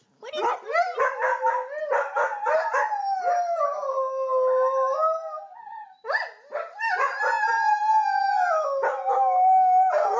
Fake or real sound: real